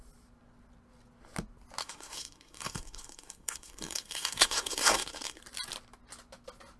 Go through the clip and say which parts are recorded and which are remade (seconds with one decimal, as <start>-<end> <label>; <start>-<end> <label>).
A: 0.0-1.8 recorded; 1.8-5.4 remade; 5.4-6.8 recorded